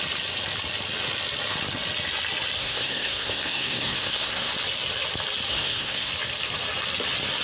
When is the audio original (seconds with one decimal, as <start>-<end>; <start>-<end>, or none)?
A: 0.0-2.6; 4.5-5.5; 6.1-7.4